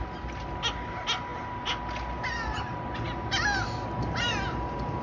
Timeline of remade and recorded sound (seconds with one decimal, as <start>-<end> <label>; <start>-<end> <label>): 0.0-5.0 recorded